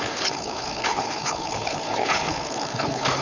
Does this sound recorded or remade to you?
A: remade